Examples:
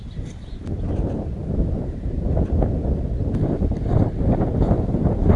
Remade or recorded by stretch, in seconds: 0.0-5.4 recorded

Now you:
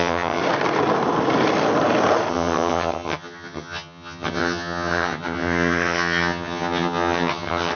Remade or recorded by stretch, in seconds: 0.0-0.4 remade; 0.4-2.3 recorded; 2.3-7.8 remade

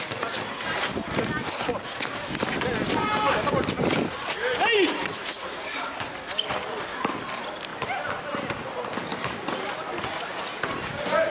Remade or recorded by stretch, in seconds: 0.0-11.3 recorded

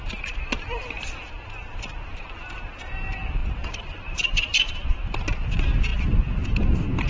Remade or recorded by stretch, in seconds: 0.0-3.4 recorded; 3.4-4.7 remade; 4.7-7.1 recorded

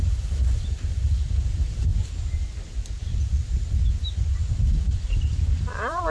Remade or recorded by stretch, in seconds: 0.0-1.9 remade; 1.9-4.4 recorded; 4.4-6.1 remade